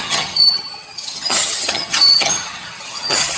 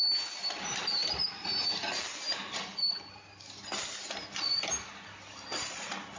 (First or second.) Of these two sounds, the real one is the second